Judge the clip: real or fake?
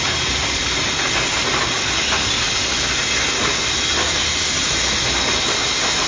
real